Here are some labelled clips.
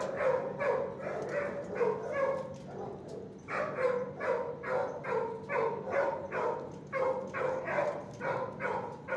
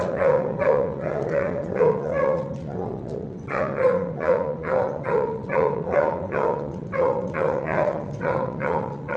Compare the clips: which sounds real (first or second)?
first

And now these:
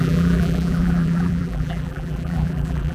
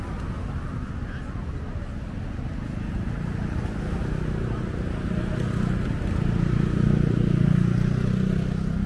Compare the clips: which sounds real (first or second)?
second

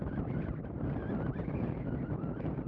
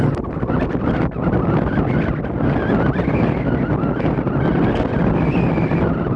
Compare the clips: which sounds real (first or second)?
second